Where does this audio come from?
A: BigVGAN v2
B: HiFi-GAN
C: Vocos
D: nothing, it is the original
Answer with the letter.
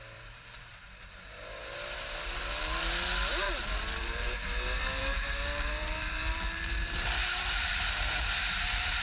A